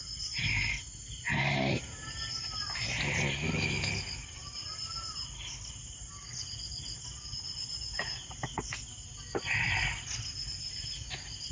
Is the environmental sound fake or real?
real